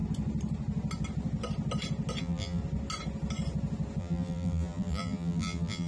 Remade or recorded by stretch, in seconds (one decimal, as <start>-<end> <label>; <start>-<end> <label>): 0.0-2.2 recorded; 2.2-2.6 remade; 2.6-4.0 recorded; 4.0-5.9 remade